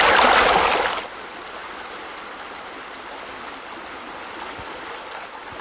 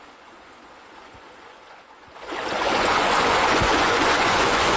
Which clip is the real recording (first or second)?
first